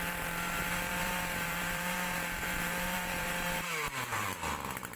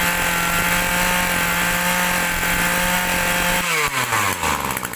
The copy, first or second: first